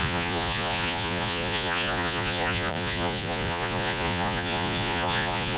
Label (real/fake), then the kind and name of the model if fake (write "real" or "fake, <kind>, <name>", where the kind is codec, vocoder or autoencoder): fake, vocoder, Vocos